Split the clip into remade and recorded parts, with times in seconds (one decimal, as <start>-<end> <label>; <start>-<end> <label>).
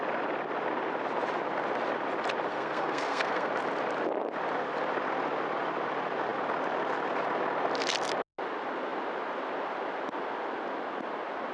0.0-2.5 recorded; 2.5-3.5 remade; 3.5-11.5 recorded